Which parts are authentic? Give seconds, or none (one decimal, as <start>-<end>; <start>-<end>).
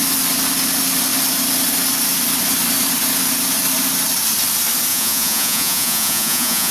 0.0-4.9